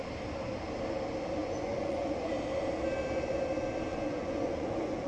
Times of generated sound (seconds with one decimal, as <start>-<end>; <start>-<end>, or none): 1.4-2.3; 3.9-5.1